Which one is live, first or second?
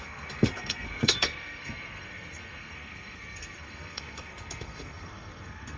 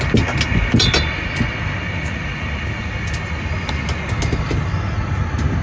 second